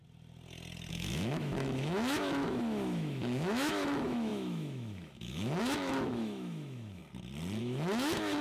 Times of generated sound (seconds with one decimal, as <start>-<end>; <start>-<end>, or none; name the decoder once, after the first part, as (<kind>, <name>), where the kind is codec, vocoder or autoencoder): 0.9-7.0 (autoencoder, DAC-VAE); 7.6-8.4